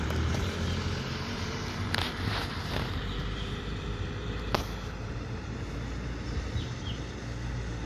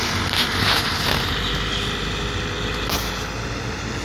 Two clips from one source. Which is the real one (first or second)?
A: second